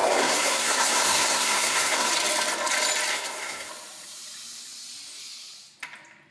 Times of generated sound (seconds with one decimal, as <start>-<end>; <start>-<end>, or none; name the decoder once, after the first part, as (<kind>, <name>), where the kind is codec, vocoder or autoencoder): 0.0-2.1 (codec, SNAC); 3.1-3.7